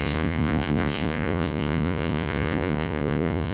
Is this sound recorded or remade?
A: remade